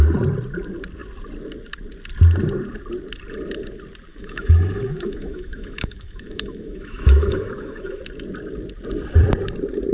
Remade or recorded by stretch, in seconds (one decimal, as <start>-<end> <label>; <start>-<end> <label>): 0.0-4.1 recorded; 4.1-8.0 remade; 8.0-9.9 recorded